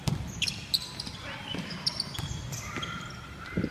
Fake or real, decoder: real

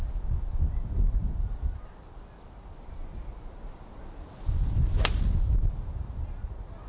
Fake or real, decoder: real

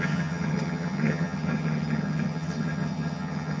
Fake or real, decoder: fake, vocoder, HiFi-GAN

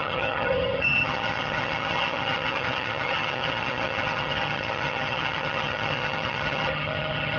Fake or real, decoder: fake, vocoder, HiFi-GAN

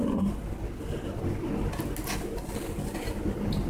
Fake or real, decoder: real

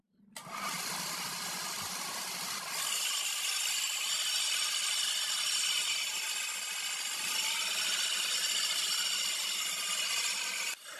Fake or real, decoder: real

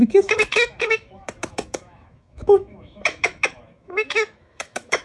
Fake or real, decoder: fake, autoencoder, DAC-VAE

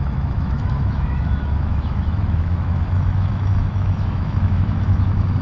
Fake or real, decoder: fake, autoencoder, DAC-VAE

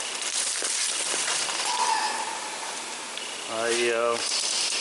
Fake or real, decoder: real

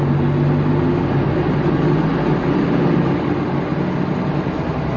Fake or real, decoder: real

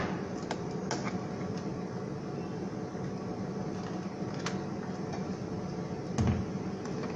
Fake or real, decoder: real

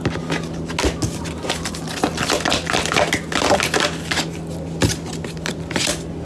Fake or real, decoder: real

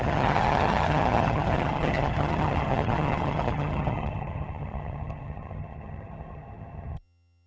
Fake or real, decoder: fake, vocoder, HiFi-GAN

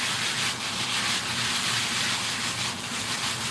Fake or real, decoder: real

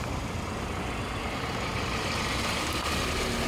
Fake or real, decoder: real